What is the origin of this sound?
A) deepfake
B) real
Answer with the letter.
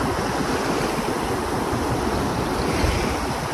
B